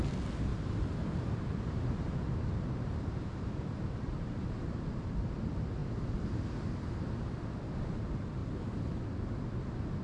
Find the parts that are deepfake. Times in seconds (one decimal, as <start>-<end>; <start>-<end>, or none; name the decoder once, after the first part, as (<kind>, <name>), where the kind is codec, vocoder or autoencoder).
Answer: 0.5-4.5 (vocoder, BigVGAN v2)